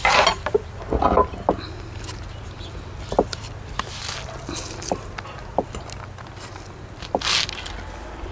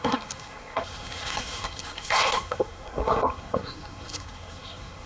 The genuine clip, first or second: first